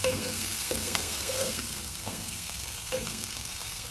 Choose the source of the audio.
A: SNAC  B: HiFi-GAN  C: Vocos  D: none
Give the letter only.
A